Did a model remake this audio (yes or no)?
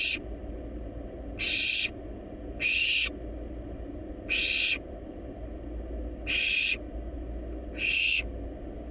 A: no